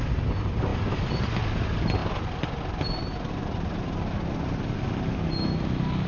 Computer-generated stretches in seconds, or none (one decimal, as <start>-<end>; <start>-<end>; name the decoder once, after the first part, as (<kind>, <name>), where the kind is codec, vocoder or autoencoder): 0.7-1.4 (vocoder, BigVGAN v2)